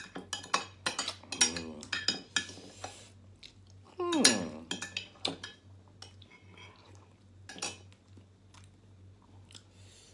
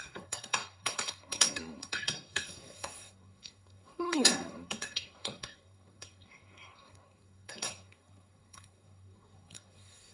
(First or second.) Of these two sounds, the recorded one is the first